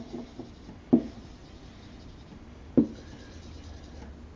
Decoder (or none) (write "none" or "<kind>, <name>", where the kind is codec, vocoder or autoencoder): none